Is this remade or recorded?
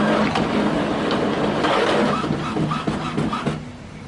recorded